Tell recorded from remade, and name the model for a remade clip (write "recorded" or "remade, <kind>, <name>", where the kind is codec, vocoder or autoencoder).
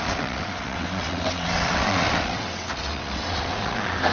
remade, vocoder, WaveNeXt